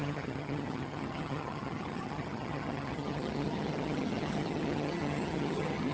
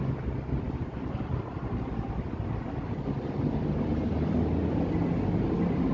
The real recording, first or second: second